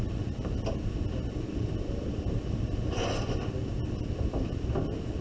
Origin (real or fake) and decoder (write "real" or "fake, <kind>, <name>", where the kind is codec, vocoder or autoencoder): real